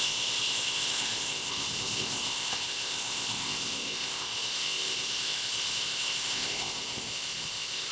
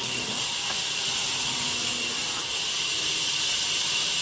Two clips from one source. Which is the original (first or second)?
second